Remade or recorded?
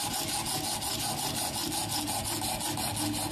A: recorded